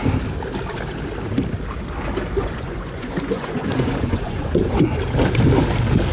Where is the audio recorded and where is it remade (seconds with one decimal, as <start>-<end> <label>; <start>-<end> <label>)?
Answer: 0.0-2.4 recorded; 2.4-5.0 remade; 5.0-6.1 recorded